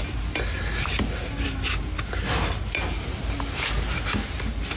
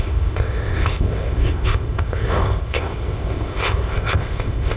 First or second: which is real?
first